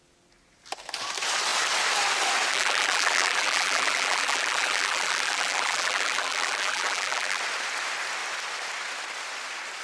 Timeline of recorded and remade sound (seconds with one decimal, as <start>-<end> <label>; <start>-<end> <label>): 0.0-2.5 recorded; 2.5-7.4 remade; 7.4-9.8 recorded